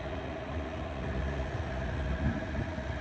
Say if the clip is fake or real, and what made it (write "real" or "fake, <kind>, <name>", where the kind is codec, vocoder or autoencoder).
fake, vocoder, Vocos